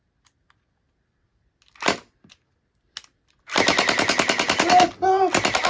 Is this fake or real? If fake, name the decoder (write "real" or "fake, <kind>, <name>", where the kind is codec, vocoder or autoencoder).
real